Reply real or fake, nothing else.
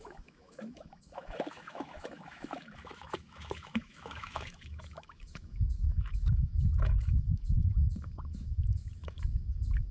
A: fake